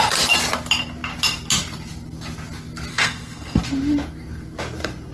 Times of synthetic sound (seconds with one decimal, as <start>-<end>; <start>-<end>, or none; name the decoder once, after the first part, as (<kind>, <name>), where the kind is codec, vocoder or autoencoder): 2.9-3.6 (codec, SNAC)